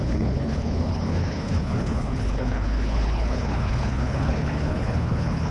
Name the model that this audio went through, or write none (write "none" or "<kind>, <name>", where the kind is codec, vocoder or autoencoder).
codec, HILCodec